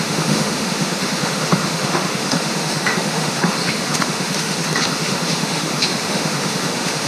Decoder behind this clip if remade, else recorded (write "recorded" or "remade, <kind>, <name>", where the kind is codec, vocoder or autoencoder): remade, autoencoder, DAC-VAE